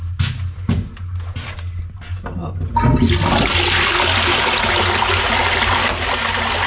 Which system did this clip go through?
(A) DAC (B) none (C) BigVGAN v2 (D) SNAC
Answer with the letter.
B